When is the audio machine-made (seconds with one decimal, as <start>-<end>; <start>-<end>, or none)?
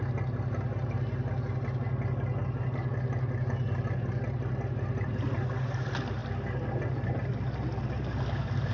none